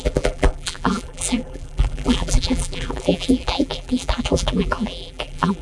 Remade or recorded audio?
remade